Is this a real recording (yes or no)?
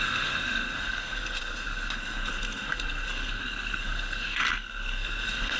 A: no